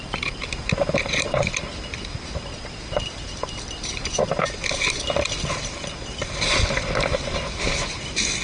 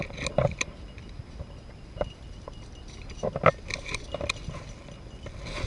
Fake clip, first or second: first